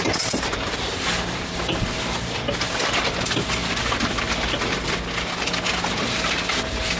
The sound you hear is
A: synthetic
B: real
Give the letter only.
B